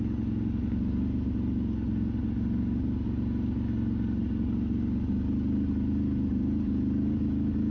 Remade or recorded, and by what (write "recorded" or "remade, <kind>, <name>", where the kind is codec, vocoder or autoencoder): recorded